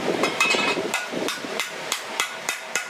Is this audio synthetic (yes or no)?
yes